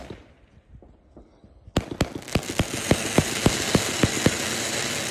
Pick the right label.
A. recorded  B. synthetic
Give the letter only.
A